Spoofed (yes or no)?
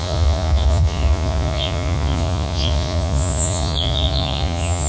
yes